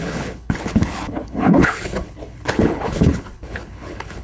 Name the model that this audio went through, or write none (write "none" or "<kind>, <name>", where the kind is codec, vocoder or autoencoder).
codec, HILCodec